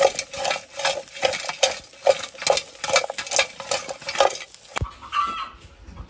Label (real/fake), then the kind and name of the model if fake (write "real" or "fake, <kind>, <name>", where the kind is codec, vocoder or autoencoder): real